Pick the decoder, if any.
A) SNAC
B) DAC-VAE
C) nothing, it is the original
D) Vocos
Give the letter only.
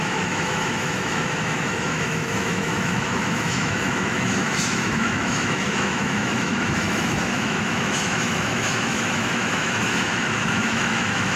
B